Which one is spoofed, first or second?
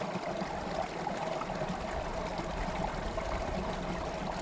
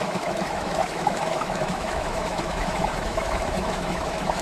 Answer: second